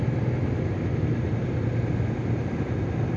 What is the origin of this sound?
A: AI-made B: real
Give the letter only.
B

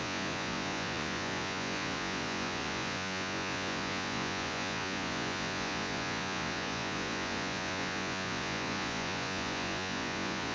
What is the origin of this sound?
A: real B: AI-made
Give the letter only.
B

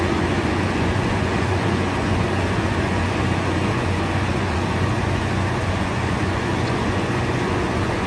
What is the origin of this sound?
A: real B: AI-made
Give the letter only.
B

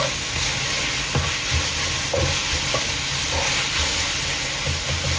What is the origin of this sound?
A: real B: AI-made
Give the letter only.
A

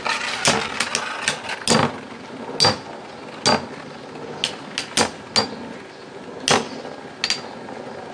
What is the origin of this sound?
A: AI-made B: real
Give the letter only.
B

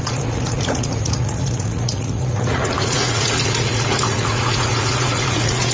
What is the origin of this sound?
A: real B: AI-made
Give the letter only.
B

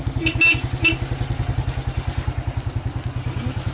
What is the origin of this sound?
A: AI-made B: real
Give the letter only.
B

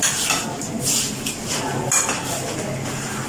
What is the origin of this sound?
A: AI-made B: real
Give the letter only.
B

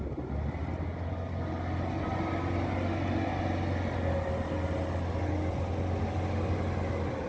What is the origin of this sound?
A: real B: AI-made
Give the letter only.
A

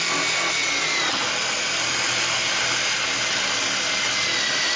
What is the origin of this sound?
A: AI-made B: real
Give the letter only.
B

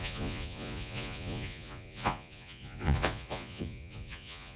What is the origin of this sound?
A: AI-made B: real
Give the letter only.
A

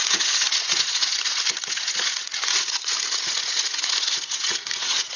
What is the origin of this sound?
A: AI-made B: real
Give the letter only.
A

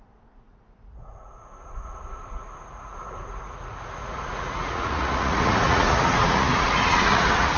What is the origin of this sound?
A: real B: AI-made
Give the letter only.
B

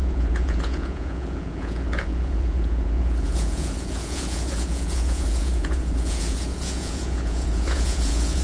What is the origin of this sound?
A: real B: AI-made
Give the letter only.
B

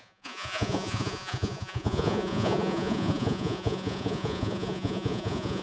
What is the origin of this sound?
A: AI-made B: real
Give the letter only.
A